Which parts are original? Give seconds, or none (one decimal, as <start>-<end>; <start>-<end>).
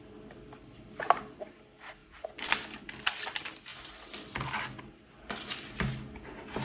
0.0-2.0; 3.1-3.7; 5.8-6.6